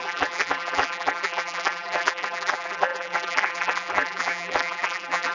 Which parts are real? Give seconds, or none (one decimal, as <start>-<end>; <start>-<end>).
none